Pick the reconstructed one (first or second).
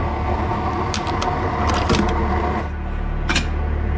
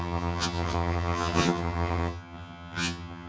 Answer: second